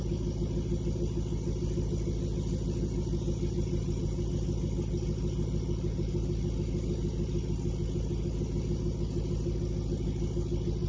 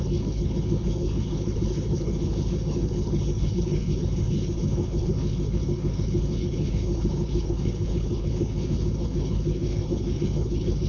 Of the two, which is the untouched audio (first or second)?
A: first